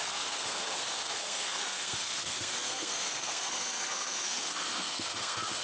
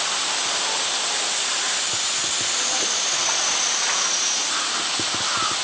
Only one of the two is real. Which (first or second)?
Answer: second